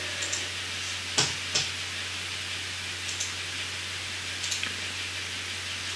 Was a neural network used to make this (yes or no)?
no